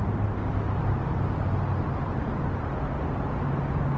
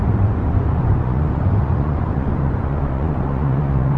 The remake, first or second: second